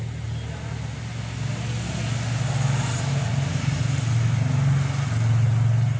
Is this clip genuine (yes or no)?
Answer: yes